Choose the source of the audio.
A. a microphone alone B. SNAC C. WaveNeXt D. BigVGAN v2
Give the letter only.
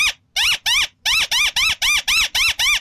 A